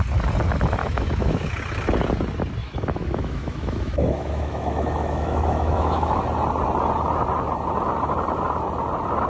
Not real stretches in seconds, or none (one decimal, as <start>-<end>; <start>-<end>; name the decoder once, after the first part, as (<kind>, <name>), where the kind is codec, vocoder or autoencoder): 0.8-1.5 (autoencoder, DAC-VAE); 2.6-6.2